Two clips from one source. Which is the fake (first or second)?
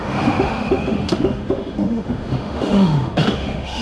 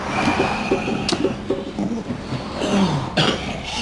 first